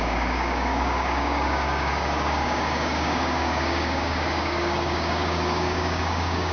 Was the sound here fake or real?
fake